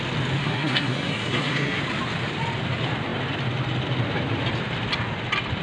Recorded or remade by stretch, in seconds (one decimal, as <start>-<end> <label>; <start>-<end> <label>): 0.0-0.4 recorded; 0.4-1.8 remade; 1.8-5.6 recorded